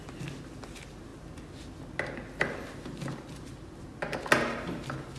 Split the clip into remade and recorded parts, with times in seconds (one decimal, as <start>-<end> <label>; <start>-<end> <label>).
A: 0.0-5.2 recorded